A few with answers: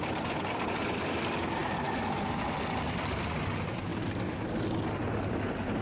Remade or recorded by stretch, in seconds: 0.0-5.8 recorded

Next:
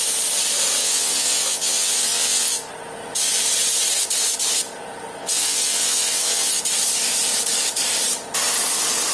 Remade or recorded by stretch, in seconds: 0.0-0.8 recorded; 0.8-2.7 remade; 2.7-5.2 recorded; 5.2-6.6 remade; 6.6-9.1 recorded

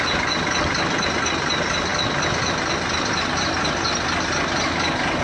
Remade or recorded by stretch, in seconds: 0.0-5.2 recorded

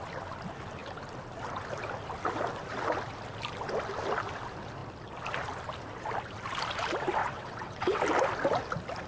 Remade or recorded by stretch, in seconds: 0.0-7.2 recorded; 7.2-8.0 remade; 8.0-9.1 recorded

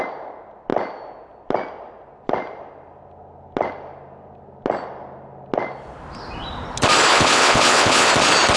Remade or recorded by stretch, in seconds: 0.0-7.1 recorded; 7.1-8.1 remade; 8.1-8.6 recorded

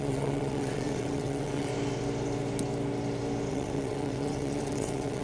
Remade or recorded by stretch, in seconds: 0.0-1.7 remade; 1.7-3.5 recorded; 3.5-5.2 remade

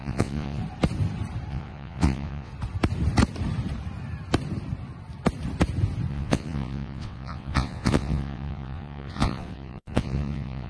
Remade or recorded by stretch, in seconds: 0.0-0.6 remade; 0.6-1.5 recorded; 1.5-2.5 remade; 2.5-6.1 recorded; 6.1-10.7 remade

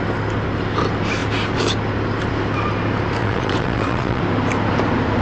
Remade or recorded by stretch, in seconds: 0.0-3.2 recorded; 3.2-4.2 remade; 4.2-5.2 recorded